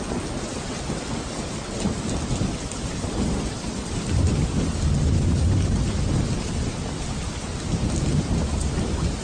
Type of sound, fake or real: real